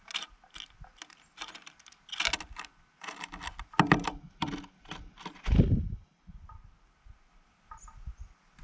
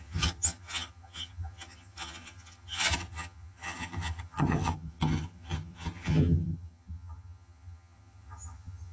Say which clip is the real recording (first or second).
first